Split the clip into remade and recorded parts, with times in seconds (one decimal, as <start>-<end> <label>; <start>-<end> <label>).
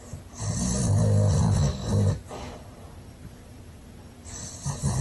0.0-1.8 recorded; 1.8-4.1 remade; 4.1-5.0 recorded